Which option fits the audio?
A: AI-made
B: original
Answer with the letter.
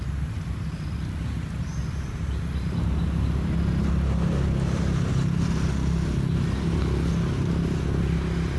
B